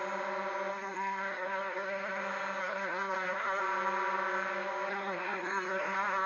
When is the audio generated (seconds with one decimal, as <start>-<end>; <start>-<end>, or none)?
0.7-2.2; 2.6-3.6; 4.9-6.3